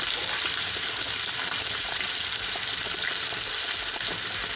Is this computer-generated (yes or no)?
no